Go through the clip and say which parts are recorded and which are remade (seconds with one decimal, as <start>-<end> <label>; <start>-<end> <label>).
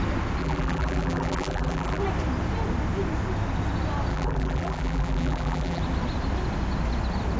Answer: 0.0-0.4 recorded; 0.4-2.0 remade; 2.0-4.1 recorded; 4.1-5.8 remade; 5.8-7.4 recorded